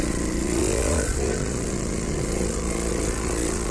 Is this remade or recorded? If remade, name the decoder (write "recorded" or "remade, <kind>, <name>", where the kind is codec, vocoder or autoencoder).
remade, vocoder, Vocos